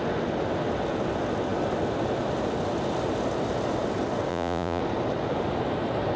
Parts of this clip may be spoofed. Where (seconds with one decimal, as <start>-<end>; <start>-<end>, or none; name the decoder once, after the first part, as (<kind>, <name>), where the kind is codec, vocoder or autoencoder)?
4.3-4.8 (vocoder, Vocos)